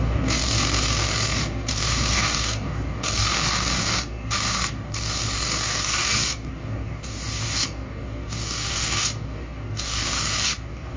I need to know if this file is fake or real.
fake